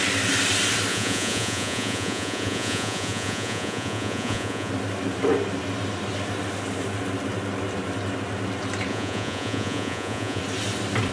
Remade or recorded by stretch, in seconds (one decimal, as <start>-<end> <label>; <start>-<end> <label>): 0.0-0.9 recorded; 0.9-4.7 remade; 4.7-8.9 recorded; 8.9-10.4 remade; 10.4-11.1 recorded